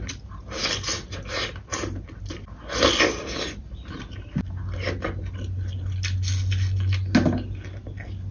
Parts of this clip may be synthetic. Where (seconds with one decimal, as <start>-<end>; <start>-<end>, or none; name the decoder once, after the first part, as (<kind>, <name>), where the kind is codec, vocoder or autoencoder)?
none